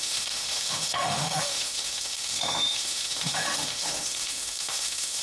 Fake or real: fake